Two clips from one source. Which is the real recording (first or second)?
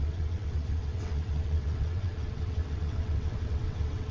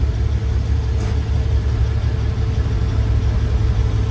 second